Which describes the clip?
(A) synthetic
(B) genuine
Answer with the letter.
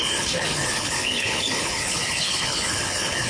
A